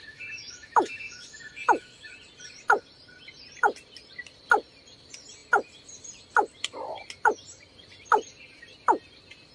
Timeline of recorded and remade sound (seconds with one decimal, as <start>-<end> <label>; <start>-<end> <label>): 0.0-2.1 remade; 2.1-9.5 recorded